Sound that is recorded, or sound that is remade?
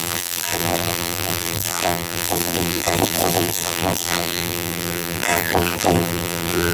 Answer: remade